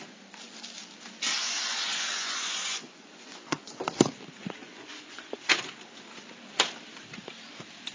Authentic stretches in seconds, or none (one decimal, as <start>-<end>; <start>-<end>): 0.0-1.4; 3.8-4.6; 5.4-7.9